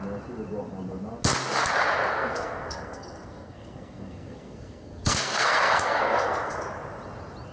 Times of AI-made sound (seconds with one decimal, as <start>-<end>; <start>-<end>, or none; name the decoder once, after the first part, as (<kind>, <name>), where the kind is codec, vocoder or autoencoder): 2.1-6.6 (codec, SNAC)